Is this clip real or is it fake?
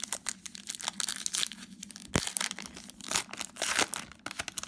real